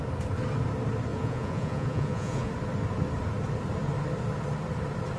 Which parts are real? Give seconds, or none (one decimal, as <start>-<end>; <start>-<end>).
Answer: 0.0-1.1; 2.5-5.2